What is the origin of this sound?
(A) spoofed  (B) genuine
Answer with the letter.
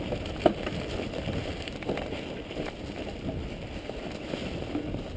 B